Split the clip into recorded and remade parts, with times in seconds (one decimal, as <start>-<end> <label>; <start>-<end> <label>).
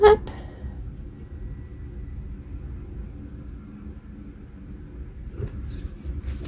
0.0-6.5 recorded